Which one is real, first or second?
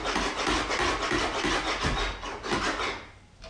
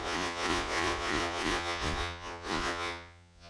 first